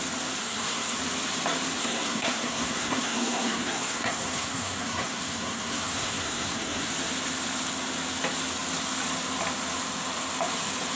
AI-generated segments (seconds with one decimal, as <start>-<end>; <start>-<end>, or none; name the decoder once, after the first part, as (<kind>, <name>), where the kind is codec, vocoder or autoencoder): 0.4-1.0 (codec, SNAC); 1.8-6.9